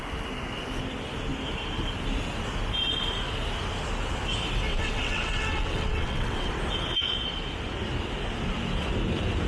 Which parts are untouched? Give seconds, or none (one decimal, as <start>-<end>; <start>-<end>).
0.0-4.7; 6.5-9.5